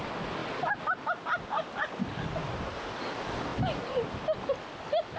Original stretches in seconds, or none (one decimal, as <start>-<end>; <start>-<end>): 0.0-5.2

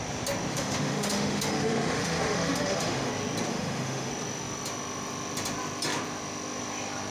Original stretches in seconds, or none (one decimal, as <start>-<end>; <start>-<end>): 0.0-0.5; 3.1-3.5; 4.1-7.1

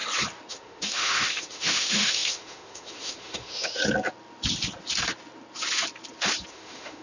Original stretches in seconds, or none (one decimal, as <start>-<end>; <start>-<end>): 0.0-0.5; 3.8-6.5

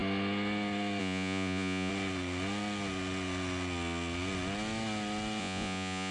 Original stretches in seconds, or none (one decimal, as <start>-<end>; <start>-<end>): 0.0-1.0; 1.9-5.4